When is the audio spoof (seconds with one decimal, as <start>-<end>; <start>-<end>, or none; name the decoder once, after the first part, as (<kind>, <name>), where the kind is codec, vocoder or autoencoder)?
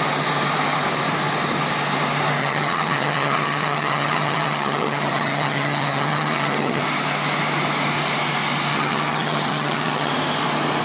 2.4-6.8 (vocoder, HiFi-GAN); 8.7-10.1